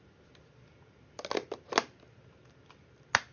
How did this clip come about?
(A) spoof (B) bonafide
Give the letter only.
B